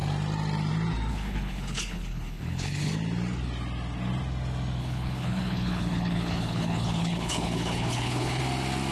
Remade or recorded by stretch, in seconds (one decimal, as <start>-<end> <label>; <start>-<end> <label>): 0.0-1.1 recorded; 1.1-2.9 remade; 2.9-4.8 recorded; 4.8-8.4 remade; 8.4-8.9 recorded